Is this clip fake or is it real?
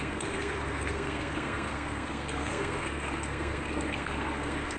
fake